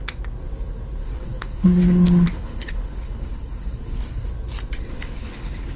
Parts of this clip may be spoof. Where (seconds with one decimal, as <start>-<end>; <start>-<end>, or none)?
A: 1.0-4.3; 4.9-5.8